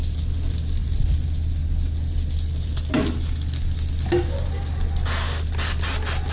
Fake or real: real